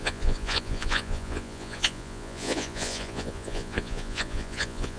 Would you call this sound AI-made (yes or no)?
yes